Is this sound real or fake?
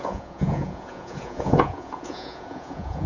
fake